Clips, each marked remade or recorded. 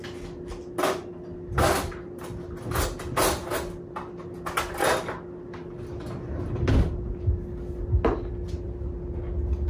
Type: recorded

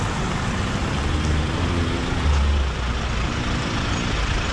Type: recorded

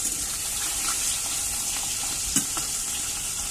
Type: recorded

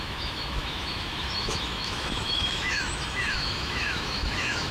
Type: remade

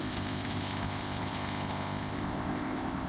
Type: remade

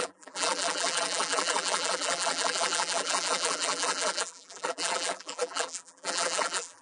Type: remade